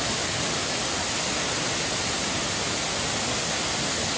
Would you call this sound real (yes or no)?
yes